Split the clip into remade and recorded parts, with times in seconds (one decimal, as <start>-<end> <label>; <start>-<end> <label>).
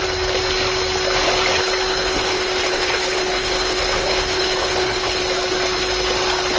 0.0-1.9 recorded; 1.9-5.2 remade; 5.2-6.6 recorded